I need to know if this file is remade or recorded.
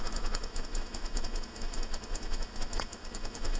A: remade